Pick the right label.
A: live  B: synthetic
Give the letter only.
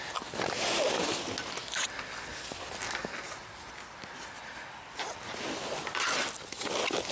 A